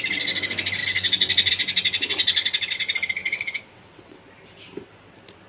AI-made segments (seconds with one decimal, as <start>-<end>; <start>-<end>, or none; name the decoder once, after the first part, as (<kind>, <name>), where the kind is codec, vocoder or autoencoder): 3.2-4.2 (vocoder, WaveNeXt)